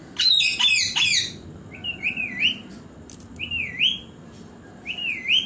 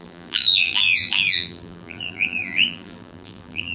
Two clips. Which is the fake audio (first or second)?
second